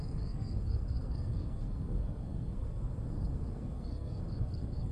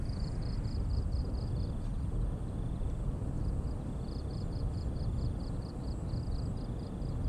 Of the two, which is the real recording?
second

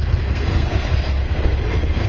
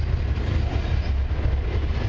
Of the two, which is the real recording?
second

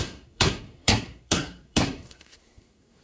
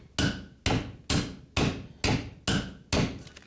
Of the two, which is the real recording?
second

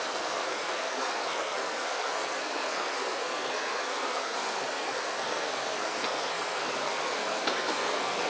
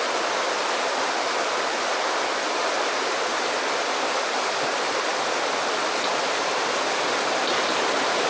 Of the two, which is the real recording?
second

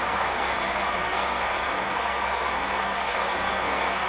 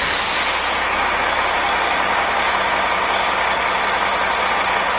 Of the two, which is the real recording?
second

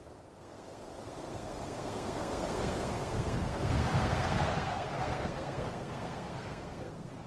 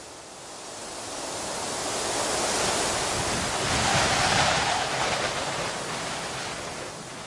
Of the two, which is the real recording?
second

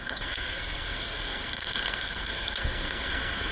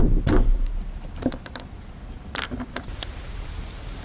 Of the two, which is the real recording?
second